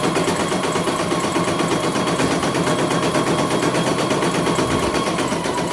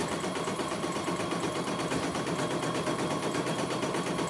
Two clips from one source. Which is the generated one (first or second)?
second